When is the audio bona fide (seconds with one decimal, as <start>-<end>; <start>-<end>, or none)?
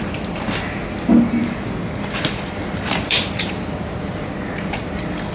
0.0-3.0; 4.2-5.3